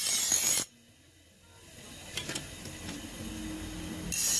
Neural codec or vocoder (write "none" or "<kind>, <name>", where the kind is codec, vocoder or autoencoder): none